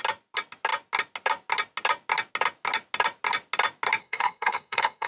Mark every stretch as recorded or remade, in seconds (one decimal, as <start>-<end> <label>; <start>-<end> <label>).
0.0-4.0 recorded; 4.0-5.1 remade